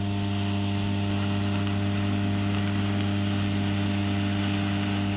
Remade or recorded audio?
recorded